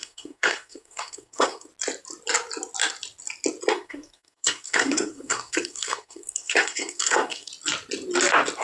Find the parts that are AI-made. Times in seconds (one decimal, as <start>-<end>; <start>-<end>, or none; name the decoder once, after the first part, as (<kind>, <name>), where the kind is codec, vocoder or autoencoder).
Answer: 0.0-1.7 (codec, SNAC); 3.7-7.5